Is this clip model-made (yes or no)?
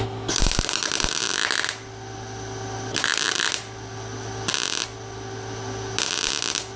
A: no